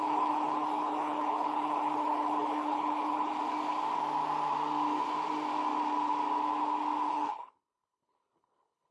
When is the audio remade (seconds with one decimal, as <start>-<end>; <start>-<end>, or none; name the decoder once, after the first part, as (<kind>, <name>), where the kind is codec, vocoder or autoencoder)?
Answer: 0.0-3.4 (codec, HILCodec); 7.1-8.9